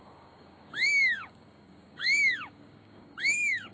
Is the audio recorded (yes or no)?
no